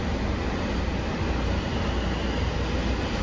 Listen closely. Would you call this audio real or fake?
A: real